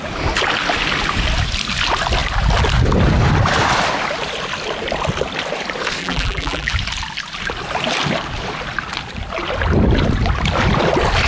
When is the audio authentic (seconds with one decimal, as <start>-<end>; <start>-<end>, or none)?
0.0-6.0; 6.7-11.3